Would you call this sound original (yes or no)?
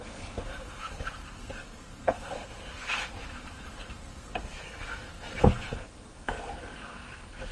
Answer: no